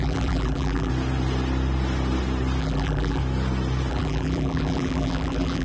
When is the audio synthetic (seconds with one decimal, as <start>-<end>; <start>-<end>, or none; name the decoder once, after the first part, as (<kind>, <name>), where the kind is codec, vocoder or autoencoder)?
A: 0.0-0.9 (vocoder, BigVGAN v2); 2.6-3.2; 3.9-5.6